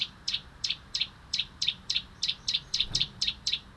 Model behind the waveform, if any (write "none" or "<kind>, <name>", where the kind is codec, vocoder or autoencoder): vocoder, BigVGAN v2